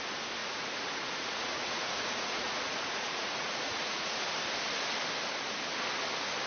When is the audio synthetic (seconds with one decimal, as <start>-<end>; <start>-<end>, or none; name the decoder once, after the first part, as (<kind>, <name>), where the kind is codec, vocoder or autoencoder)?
0.4-4.3 (vocoder, Vocos)